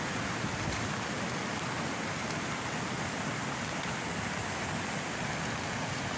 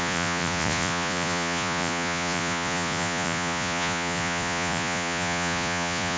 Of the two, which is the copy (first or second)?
second